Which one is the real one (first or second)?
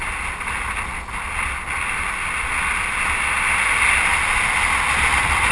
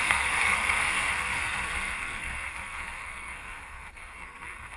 first